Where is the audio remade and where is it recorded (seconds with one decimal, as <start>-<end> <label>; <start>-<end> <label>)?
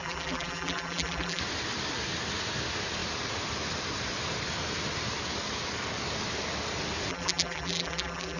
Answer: 0.0-1.4 remade; 1.4-7.1 recorded; 7.1-8.4 remade